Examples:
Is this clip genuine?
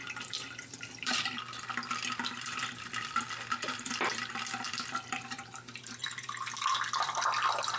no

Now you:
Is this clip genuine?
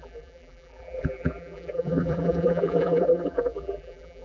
no